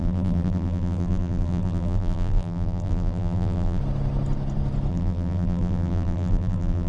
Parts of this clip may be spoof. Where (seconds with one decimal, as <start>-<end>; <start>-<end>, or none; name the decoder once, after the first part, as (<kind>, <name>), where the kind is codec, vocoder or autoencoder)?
0.0-3.8 (vocoder, BigVGAN v2); 4.9-6.9